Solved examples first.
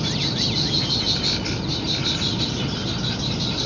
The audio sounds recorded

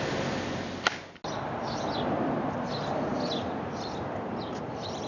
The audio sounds recorded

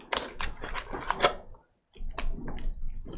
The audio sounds recorded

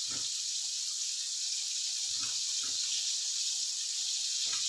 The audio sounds recorded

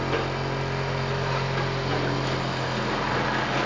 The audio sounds recorded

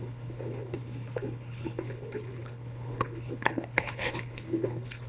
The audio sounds remade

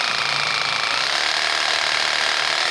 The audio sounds recorded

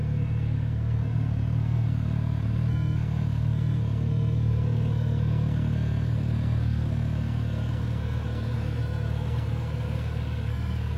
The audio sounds remade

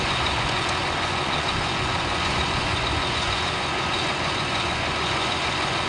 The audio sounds remade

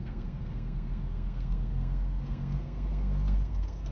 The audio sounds remade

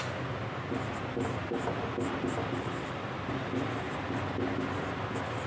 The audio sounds recorded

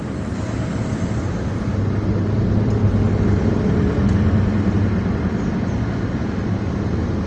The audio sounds recorded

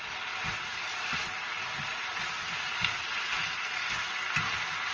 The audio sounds recorded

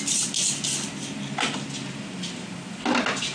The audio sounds recorded